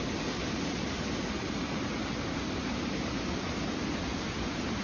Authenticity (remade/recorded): recorded